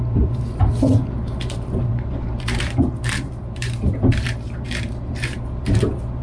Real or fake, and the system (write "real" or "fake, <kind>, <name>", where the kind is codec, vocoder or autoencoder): fake, vocoder, BigVGAN v2